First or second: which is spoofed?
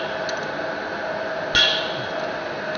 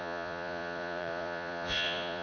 second